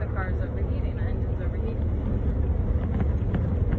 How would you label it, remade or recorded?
recorded